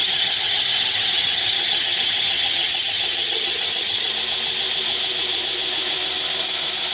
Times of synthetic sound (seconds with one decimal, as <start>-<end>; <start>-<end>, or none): 0.0-4.1